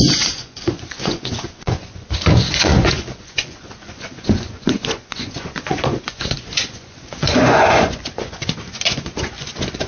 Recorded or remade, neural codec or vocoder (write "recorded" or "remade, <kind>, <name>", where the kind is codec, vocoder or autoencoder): remade, vocoder, Vocos